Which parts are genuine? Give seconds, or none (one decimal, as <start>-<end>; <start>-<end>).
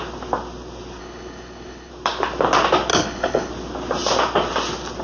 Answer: 0.0-1.0; 1.9-2.9; 3.5-5.0